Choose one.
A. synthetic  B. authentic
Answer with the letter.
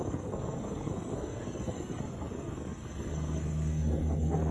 A